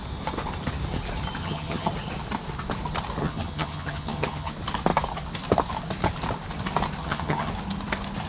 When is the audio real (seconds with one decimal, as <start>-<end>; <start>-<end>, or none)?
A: 0.0-1.4; 1.9-3.2; 4.5-7.0; 7.5-8.3